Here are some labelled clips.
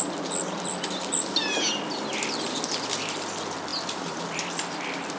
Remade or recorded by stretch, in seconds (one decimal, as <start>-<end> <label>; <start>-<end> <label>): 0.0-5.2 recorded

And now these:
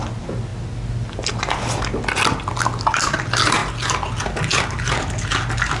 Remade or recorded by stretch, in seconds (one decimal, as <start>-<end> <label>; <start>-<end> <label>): 0.0-5.8 recorded

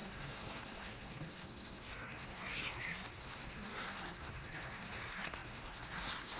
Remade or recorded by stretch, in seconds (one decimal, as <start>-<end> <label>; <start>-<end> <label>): 0.0-6.4 remade

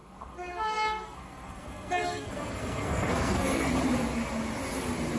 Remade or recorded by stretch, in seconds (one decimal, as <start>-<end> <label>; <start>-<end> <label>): 0.0-3.7 remade; 3.7-5.2 recorded

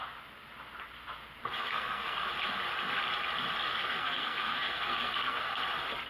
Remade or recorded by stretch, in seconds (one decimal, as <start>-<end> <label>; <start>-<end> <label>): 0.0-1.6 recorded; 1.6-2.3 remade; 2.3-3.7 recorded; 3.7-5.6 remade; 5.6-6.1 recorded